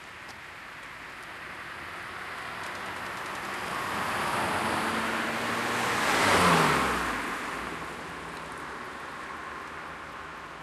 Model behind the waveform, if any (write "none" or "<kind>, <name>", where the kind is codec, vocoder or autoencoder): none